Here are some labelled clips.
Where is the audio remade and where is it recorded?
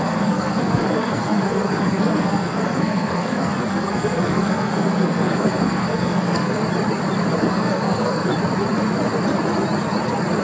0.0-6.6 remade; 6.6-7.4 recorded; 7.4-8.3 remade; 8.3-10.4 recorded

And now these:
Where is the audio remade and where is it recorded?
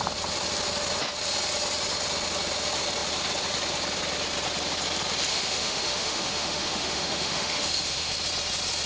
0.0-5.3 recorded; 5.3-8.1 remade; 8.1-8.9 recorded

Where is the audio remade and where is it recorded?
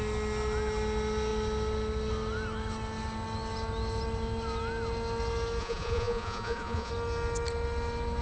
0.0-5.6 recorded; 5.6-6.9 remade; 6.9-8.2 recorded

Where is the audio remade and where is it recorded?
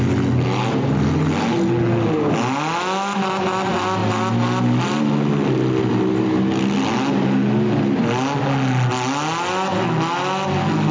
0.0-10.9 recorded